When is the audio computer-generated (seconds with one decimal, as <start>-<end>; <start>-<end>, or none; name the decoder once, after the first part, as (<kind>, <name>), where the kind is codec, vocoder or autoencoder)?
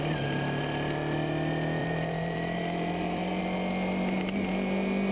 1.8-3.4 (vocoder, BigVGAN v2)